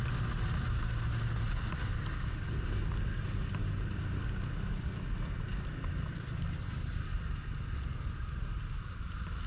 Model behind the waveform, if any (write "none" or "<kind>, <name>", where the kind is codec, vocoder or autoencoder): none